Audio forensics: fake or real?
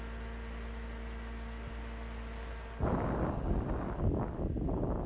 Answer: real